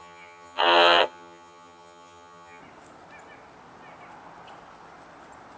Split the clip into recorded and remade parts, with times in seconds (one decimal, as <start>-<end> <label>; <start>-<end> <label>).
0.0-2.6 remade; 2.6-5.6 recorded